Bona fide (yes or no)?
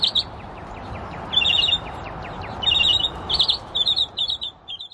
no